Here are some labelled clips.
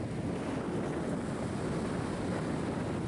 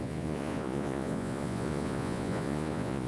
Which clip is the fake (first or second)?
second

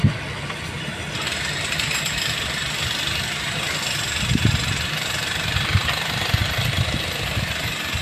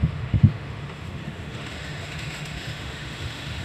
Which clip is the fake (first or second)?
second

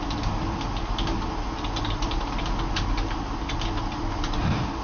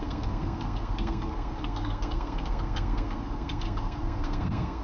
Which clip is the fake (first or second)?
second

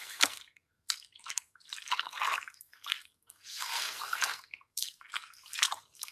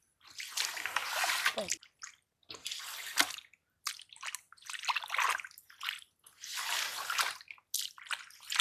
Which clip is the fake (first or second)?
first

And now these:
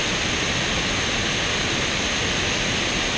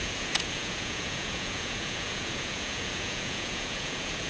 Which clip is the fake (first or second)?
second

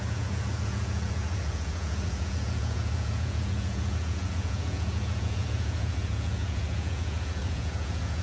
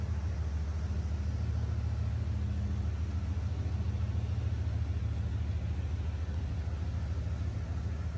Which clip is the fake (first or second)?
first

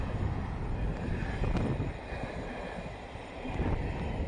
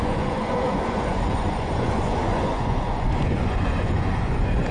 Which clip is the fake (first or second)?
second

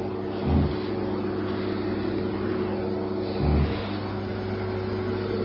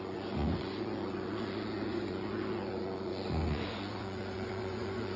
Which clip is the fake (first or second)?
second